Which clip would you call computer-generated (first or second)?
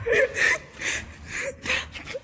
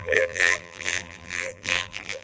second